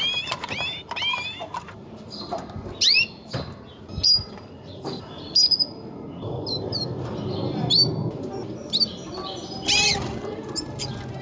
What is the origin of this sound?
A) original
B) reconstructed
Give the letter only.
A